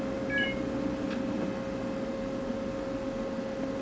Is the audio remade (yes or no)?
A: no